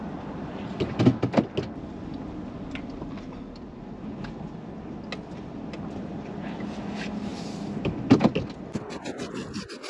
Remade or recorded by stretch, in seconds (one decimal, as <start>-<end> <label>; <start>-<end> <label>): 0.0-9.9 recorded